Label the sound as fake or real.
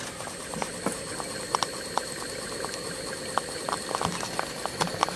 real